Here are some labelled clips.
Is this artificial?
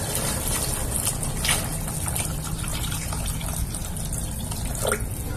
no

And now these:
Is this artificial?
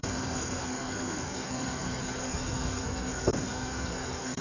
yes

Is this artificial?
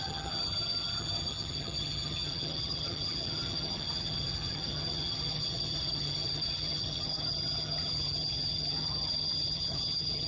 yes